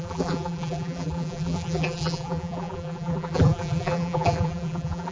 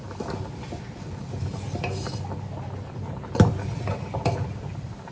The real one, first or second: second